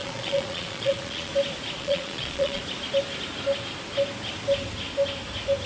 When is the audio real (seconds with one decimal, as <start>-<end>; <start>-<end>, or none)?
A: 1.3-1.8; 2.6-5.7